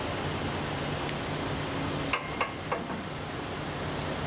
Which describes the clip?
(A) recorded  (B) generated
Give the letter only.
A